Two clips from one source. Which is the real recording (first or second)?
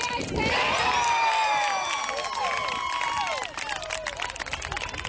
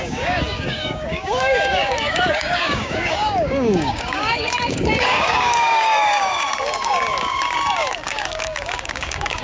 first